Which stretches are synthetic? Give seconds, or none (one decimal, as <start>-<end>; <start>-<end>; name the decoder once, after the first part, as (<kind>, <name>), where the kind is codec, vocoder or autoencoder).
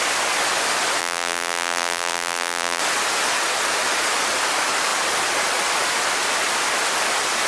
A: 1.0-2.8 (vocoder, BigVGAN v2)